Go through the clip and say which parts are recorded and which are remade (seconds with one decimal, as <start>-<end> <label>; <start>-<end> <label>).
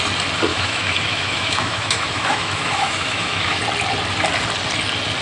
0.0-0.5 recorded; 0.5-3.6 remade; 3.6-5.2 recorded